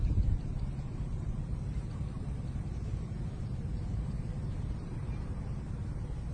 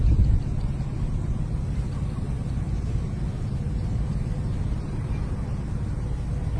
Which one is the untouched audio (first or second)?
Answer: second